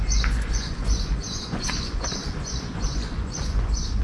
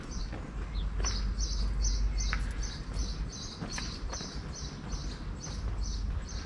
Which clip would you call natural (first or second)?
second